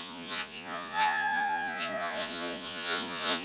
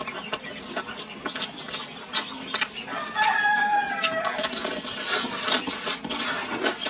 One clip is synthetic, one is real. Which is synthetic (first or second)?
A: first